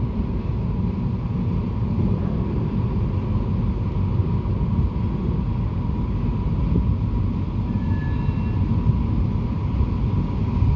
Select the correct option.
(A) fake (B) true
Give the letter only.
B